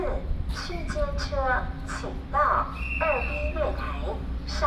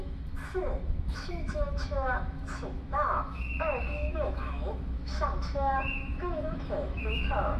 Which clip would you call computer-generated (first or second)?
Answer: second